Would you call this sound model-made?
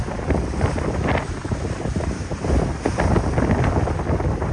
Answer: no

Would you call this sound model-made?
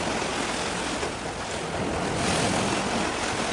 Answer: no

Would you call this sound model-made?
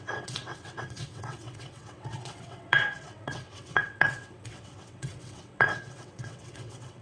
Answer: yes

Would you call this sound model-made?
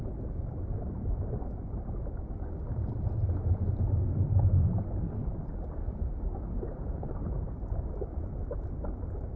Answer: no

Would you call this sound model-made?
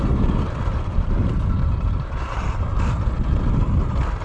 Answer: no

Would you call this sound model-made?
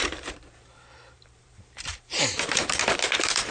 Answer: yes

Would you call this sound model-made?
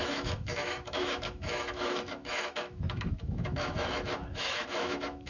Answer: yes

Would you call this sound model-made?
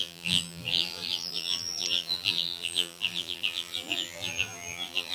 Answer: yes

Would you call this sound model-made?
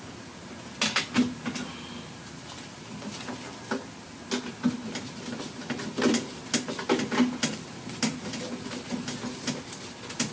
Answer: no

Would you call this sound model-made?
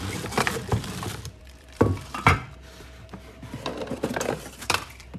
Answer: yes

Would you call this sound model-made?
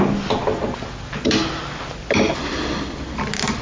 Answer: no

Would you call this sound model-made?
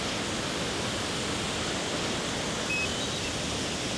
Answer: no